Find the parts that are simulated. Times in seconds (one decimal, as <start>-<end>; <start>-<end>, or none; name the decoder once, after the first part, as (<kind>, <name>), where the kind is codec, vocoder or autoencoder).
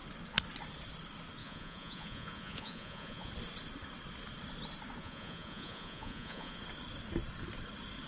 1.4-3.3 (vocoder, Vocos); 5.0-6.6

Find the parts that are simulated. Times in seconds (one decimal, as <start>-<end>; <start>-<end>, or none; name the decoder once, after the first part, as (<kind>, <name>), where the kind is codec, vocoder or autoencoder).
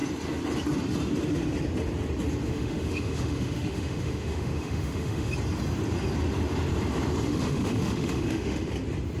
2.5-5.3 (autoencoder, DAC-VAE); 7.3-8.7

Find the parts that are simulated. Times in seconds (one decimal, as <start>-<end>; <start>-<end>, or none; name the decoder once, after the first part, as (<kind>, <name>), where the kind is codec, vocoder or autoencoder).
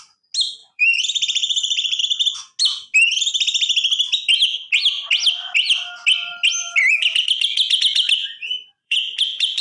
0.6-2.0 (vocoder, BigVGAN v2); 8.2-9.6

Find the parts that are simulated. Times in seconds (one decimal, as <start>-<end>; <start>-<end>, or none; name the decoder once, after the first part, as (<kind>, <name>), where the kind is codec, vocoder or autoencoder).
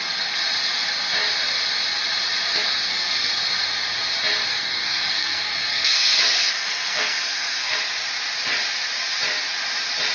2.5-3.3 (codec, SNAC); 4.5-7.8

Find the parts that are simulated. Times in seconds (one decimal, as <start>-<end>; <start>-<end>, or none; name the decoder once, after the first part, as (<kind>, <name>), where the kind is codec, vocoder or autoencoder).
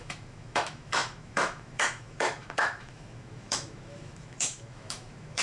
0.0-5.4 (autoencoder, DAC-VAE)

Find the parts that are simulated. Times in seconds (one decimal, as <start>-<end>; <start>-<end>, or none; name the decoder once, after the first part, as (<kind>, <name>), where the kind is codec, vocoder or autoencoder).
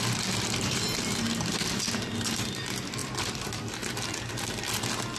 none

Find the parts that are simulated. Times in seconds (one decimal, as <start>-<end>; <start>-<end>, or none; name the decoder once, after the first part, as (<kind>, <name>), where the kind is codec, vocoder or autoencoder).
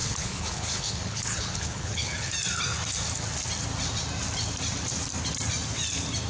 0.0-2.3 (codec, HILCodec)